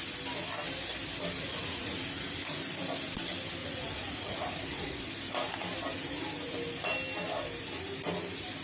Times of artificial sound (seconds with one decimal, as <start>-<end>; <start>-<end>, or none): 1.4-2.6; 3.6-5.1